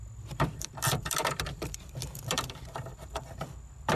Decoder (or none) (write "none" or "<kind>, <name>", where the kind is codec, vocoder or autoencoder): vocoder, BigVGAN v2